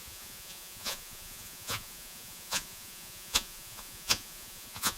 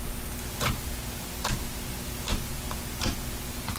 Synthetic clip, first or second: first